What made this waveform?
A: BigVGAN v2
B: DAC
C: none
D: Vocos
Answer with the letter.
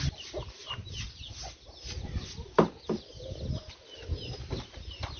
C